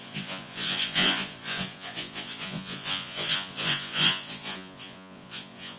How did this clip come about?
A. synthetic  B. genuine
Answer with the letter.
A